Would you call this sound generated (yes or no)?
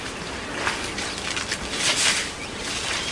no